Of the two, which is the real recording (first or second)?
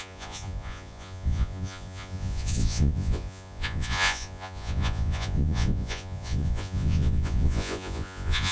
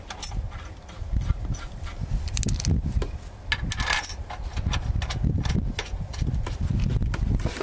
second